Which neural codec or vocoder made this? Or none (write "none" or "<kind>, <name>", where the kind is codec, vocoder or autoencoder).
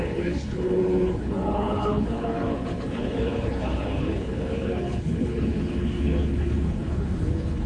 codec, HILCodec